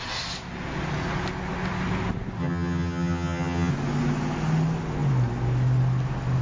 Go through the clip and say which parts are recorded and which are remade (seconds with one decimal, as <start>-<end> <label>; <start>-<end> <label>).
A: 0.0-2.4 recorded; 2.4-3.7 remade; 3.7-6.4 recorded